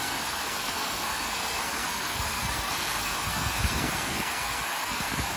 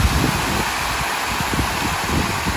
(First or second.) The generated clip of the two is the first